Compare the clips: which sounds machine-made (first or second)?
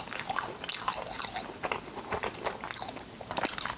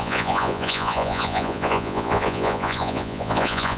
second